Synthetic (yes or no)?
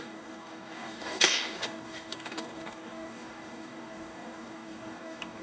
yes